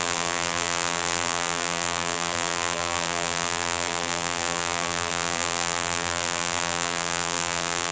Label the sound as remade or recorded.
remade